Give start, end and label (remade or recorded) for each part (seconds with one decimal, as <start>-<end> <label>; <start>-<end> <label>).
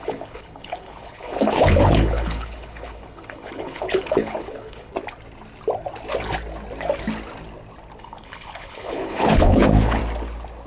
0.0-4.9 remade; 4.9-8.0 recorded; 8.0-10.0 remade; 10.0-10.7 recorded